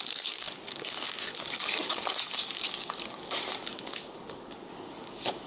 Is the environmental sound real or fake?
fake